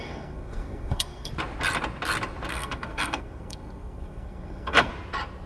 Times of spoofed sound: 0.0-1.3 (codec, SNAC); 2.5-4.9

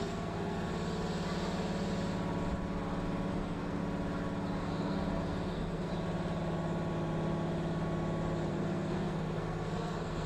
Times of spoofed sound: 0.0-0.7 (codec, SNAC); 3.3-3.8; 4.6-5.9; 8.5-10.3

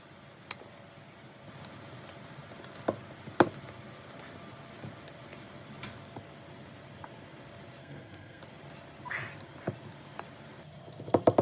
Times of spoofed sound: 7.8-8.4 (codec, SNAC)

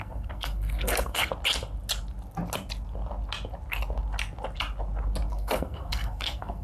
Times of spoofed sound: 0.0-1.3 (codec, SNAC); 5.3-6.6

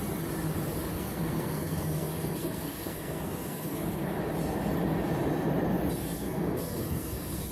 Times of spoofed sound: 0.9-4.2 (codec, SNAC); 6.0-7.5

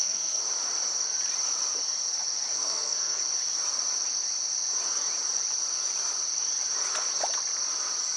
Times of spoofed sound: 0.0-0.4 (codec, SNAC); 2.5-3.2